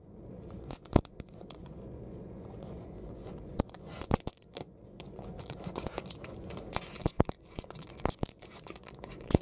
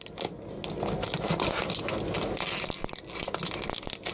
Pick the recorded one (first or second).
second